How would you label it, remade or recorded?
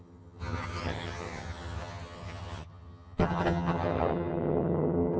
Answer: remade